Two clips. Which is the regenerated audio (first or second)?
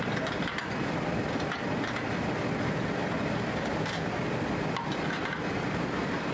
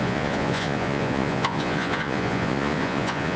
second